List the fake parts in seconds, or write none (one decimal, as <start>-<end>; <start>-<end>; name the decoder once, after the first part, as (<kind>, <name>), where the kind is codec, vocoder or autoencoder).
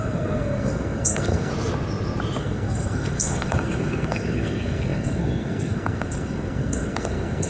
0.0-1.5 (codec, SNAC); 2.4-7.5